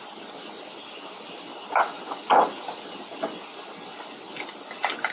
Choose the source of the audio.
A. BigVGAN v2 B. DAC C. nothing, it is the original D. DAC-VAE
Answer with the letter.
C